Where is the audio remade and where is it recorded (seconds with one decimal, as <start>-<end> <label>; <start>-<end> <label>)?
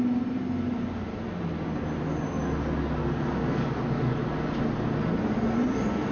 0.0-3.0 recorded; 3.0-4.2 remade; 4.2-6.1 recorded